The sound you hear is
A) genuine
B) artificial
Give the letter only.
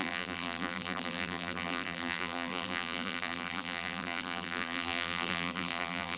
B